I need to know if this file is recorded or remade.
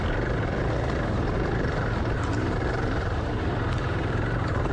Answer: remade